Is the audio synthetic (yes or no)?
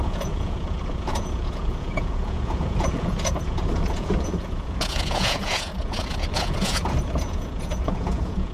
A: yes